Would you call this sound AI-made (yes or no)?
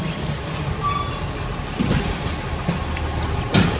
no